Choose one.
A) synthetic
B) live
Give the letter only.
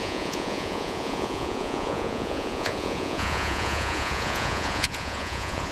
A